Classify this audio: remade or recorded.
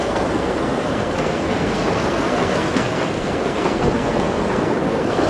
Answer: remade